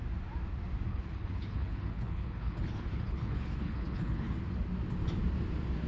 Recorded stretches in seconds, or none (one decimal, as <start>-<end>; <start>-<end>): 0.0-0.9; 4.4-5.9